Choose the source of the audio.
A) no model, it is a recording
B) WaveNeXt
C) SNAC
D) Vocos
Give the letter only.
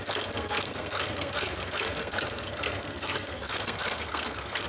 C